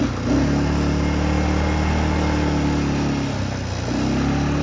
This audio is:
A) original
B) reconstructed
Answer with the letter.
A